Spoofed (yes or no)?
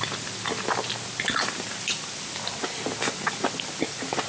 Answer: no